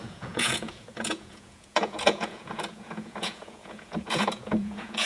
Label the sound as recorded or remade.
remade